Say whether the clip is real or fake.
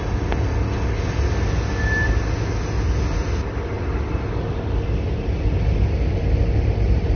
real